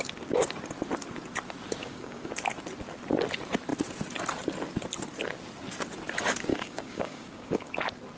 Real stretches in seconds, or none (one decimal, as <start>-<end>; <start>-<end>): 0.0-1.8; 2.3-6.5; 7.7-8.2